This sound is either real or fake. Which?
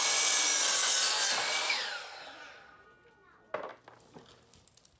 real